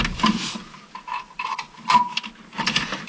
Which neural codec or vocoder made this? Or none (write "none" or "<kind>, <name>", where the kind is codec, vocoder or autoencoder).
none